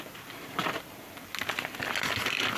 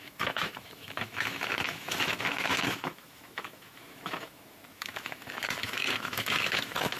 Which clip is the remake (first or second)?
second